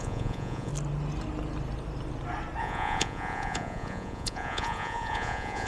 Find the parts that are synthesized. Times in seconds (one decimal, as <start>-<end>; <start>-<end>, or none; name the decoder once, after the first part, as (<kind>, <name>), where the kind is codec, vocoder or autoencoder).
0.0-0.7 (vocoder, Vocos); 2.6-5.7